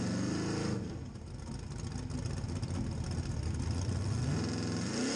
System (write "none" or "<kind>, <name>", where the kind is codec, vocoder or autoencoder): none